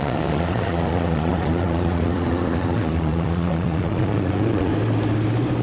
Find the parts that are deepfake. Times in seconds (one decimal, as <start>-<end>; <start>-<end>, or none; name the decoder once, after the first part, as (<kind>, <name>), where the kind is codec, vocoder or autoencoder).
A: 0.0-4.7 (vocoder, Vocos)